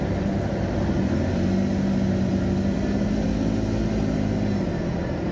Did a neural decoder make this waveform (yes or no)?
no